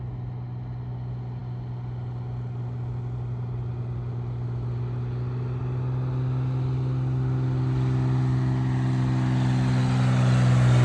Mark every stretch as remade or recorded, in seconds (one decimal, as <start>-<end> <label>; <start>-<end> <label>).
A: 0.0-10.8 recorded